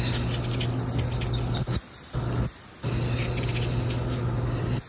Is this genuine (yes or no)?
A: yes